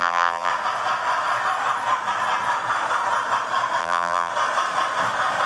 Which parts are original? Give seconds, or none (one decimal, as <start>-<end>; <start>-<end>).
0.5-3.8; 4.3-5.5